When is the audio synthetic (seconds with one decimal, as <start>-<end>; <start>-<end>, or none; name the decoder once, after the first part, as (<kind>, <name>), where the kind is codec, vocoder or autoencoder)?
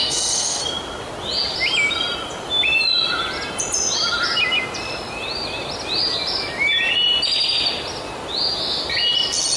0.0-0.6 (codec, SNAC)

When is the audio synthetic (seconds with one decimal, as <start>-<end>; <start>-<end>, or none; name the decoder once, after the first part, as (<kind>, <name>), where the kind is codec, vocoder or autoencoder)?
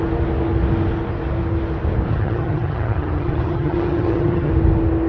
2.1-4.5 (vocoder, HiFi-GAN)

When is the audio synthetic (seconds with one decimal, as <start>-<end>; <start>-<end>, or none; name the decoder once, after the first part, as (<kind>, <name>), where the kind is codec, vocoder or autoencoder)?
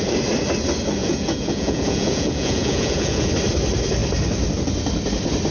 1.0-3.3 (vocoder, Vocos)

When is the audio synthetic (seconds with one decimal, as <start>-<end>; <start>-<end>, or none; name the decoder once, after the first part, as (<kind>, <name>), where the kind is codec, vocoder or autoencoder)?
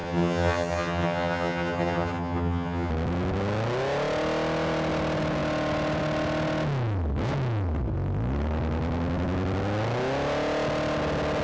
0.0-2.9 (vocoder, HiFi-GAN)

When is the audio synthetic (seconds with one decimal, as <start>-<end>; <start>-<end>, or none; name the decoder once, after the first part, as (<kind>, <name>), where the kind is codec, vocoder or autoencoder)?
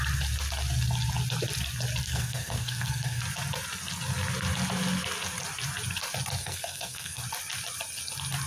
2.1-3.2 (codec, SNAC); 6.4-7.2